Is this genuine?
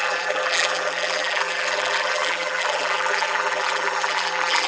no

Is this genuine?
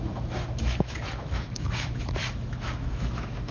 no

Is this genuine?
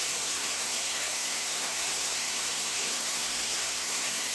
no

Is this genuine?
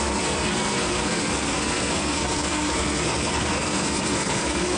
no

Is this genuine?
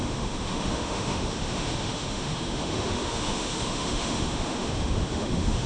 no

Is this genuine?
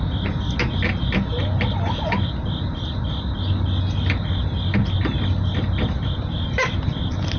yes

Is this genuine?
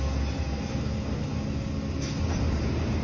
yes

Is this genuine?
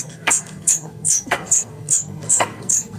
no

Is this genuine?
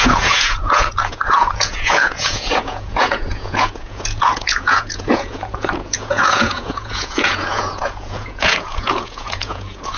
no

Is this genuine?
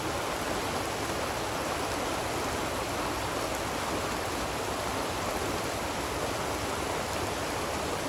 yes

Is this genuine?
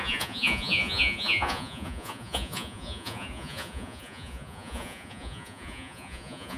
no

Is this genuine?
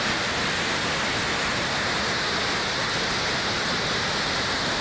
yes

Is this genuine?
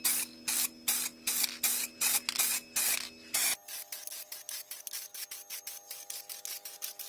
yes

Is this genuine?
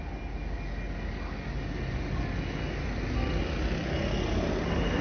yes